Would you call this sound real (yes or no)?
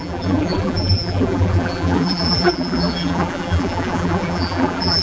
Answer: no